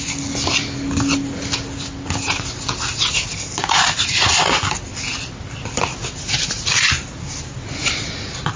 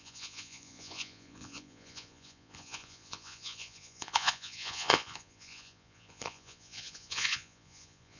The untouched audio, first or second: first